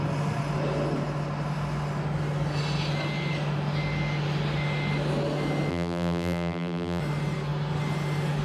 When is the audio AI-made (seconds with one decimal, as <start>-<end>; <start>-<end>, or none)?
5.7-7.0